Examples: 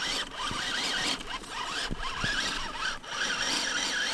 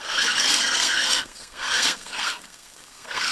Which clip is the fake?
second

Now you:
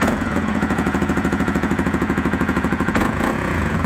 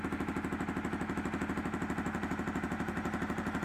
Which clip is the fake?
first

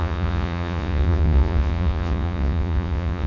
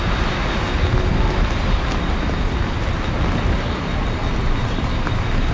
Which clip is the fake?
first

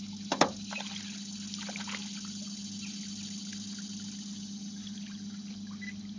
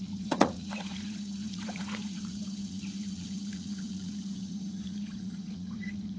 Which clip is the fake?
second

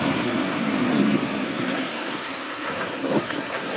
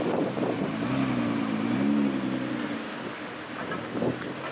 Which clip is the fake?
first